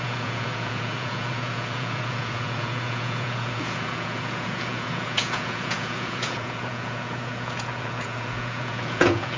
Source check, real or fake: fake